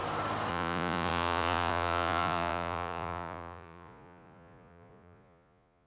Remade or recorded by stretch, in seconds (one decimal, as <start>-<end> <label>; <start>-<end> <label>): 0.0-0.5 recorded; 0.5-5.9 remade